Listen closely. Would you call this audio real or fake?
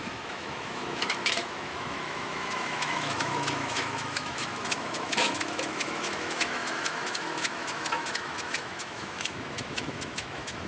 fake